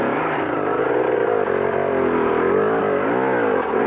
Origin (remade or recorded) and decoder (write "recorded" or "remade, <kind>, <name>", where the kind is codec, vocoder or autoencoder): recorded